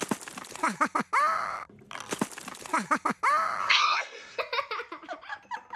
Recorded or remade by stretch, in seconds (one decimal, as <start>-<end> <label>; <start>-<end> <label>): 0.0-3.6 recorded; 3.6-4.4 remade; 4.4-5.8 recorded